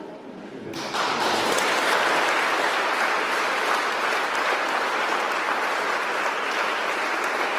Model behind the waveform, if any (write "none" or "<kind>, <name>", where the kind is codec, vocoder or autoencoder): none